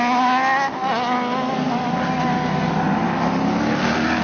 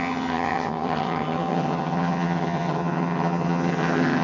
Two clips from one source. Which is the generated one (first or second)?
second